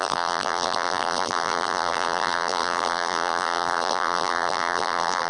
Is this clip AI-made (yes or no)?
yes